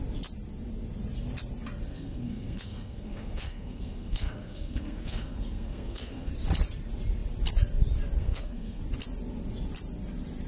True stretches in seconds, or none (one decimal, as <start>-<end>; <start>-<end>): 0.0-1.9; 6.3-8.2; 8.8-10.5